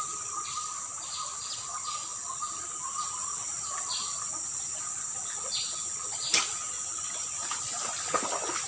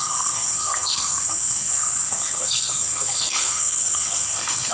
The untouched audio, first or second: first